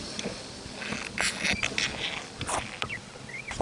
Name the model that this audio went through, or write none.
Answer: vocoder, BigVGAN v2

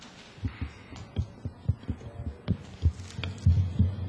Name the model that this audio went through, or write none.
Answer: none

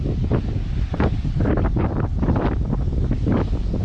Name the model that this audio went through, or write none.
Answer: vocoder, BigVGAN v2